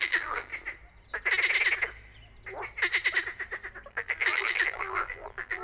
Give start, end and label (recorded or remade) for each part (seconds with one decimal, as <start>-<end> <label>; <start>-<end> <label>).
0.0-0.5 remade; 0.5-3.9 recorded; 3.9-5.6 remade